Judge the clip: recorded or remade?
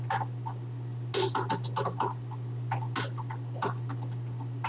recorded